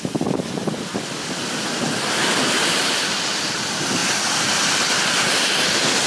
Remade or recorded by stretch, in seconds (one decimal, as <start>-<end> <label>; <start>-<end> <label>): 0.0-6.1 recorded